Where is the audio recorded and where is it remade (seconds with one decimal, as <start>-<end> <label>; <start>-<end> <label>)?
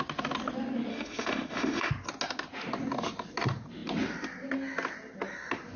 0.0-0.9 recorded; 0.9-1.9 remade; 1.9-5.8 recorded